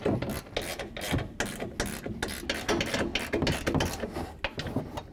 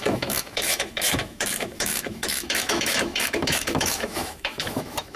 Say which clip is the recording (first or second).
first